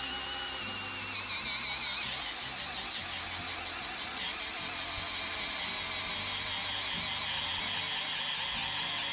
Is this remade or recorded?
recorded